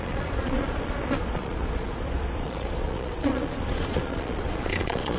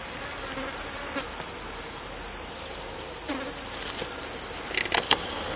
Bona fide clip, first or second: second